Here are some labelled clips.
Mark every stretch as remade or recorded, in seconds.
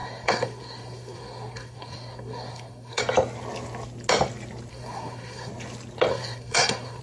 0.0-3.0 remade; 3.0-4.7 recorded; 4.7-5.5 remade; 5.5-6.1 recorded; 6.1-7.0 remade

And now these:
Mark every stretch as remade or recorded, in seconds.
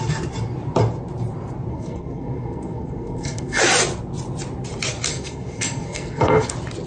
0.0-1.7 recorded; 1.7-3.6 remade; 3.6-5.1 recorded; 5.1-6.5 remade; 6.5-6.9 recorded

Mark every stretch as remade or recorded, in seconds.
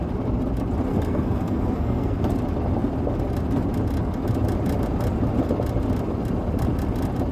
0.0-0.9 recorded; 0.9-2.2 remade; 2.2-7.3 recorded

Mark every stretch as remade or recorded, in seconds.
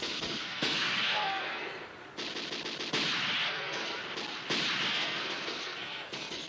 0.0-1.9 remade; 1.9-3.5 recorded; 3.5-4.0 remade; 4.0-4.9 recorded; 4.9-6.5 remade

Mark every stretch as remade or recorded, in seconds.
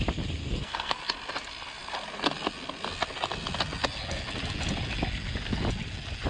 0.0-0.4 recorded; 0.4-1.0 remade; 1.0-6.3 recorded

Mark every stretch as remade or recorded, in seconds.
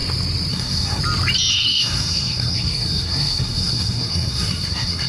0.0-0.5 recorded; 0.5-1.0 remade; 1.0-1.5 recorded; 1.5-5.1 remade